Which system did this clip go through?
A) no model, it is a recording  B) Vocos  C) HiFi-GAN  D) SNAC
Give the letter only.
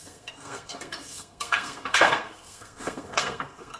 D